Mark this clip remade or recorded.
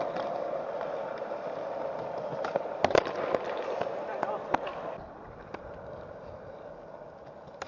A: recorded